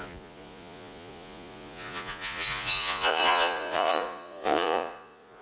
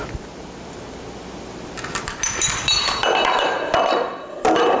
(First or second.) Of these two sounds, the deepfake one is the first